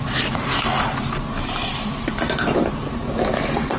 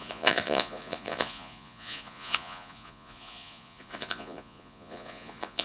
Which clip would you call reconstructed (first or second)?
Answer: second